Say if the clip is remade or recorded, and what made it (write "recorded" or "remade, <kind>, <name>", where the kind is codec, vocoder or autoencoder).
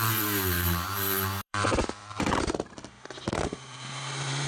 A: remade, vocoder, BigVGAN v2